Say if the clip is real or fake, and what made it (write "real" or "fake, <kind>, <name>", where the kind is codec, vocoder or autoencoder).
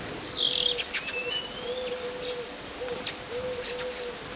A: real